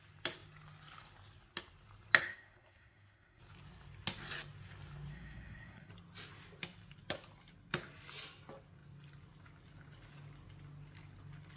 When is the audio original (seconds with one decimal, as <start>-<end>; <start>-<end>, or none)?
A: 0.0-2.2; 3.4-5.1; 5.9-11.6